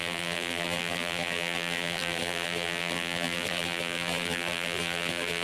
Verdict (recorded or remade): remade